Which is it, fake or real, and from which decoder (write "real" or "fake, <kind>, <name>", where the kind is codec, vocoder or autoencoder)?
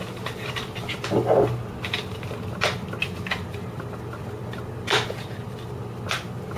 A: real